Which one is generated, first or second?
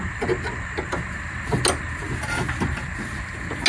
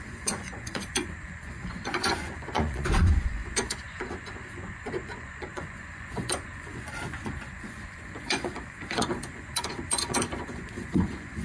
second